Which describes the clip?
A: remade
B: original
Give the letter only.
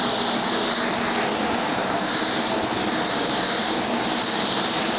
B